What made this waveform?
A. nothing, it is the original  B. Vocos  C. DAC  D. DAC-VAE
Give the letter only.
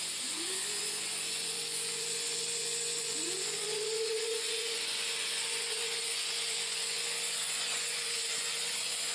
B